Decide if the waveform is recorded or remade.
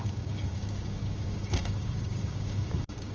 remade